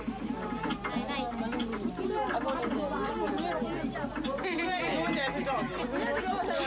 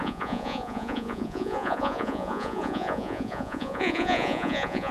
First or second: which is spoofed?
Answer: second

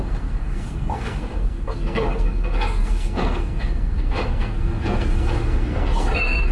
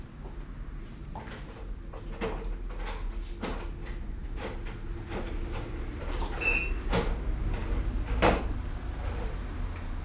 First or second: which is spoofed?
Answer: first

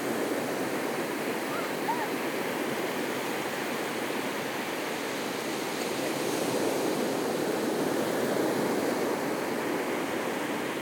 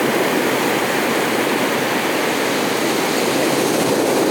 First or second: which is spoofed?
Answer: first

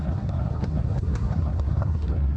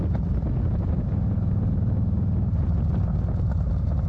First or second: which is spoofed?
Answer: first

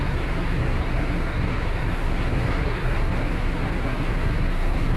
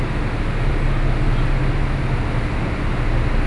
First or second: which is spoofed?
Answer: first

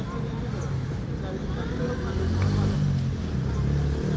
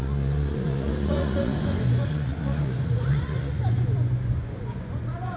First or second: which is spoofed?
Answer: second